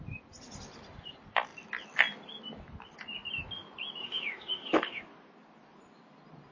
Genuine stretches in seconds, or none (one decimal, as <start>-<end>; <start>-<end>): 0.0-4.0; 5.0-6.5